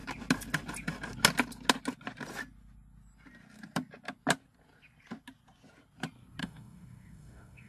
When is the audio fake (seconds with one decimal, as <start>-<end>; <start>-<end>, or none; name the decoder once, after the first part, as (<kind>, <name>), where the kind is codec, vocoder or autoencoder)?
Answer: 6.4-7.7 (autoencoder, DAC-VAE)